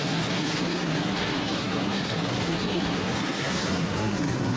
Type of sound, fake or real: fake